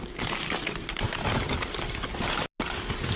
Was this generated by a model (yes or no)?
no